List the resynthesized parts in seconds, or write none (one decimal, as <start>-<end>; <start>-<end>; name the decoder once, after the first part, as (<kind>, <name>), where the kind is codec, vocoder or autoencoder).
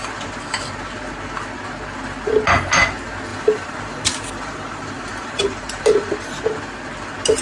3.3-6.4 (vocoder, BigVGAN v2)